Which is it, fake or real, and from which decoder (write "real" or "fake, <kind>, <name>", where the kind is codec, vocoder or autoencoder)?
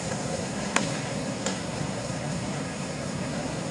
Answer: fake, codec, SNAC